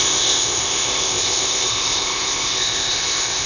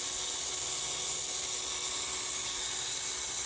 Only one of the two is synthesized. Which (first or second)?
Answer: first